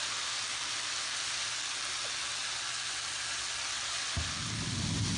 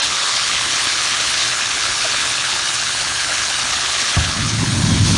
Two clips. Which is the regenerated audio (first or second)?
second